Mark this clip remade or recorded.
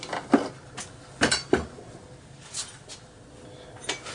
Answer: recorded